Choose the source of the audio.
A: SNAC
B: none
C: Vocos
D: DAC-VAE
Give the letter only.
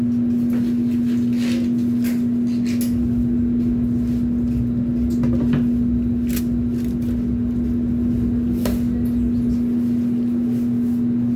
B